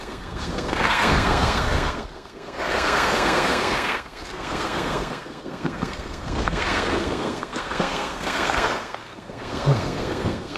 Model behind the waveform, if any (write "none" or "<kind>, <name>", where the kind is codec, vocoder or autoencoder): codec, SNAC